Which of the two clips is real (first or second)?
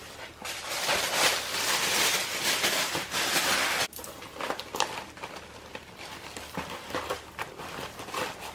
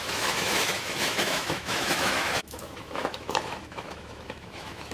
first